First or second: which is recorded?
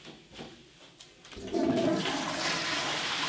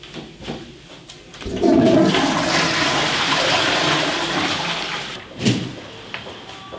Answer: first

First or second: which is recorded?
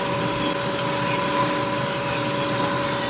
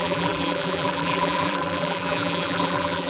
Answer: first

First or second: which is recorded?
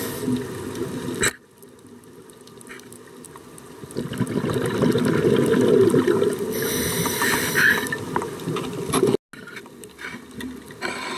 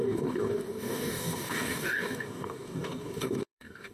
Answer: first